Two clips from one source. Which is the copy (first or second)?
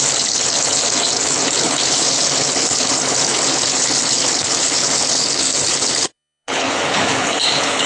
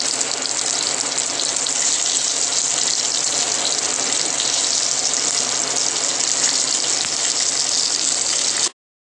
first